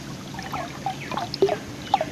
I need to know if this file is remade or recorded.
recorded